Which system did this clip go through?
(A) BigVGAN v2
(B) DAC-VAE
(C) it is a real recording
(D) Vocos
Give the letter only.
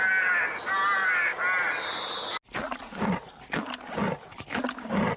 C